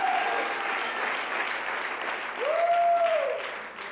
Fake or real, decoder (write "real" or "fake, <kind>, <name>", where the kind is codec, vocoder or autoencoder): real